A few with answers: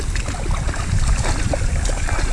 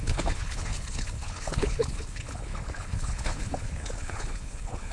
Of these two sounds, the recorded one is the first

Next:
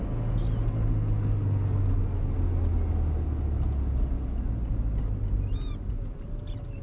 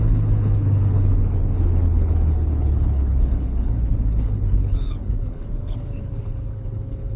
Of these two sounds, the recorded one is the first